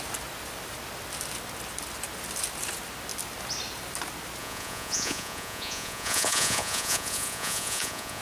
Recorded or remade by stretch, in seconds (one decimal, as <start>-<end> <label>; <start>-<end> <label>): 0.0-4.4 recorded; 4.4-8.2 remade